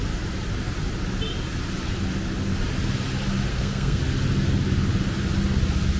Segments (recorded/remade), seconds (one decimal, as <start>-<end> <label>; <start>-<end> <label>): 0.0-3.5 recorded; 3.5-4.0 remade; 4.0-6.0 recorded